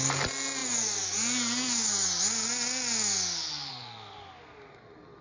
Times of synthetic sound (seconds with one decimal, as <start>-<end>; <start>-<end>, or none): none